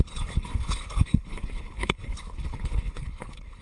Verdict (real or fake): fake